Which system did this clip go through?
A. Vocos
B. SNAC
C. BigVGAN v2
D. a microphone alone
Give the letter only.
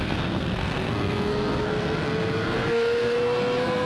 B